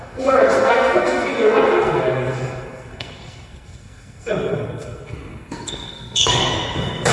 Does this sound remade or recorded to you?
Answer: remade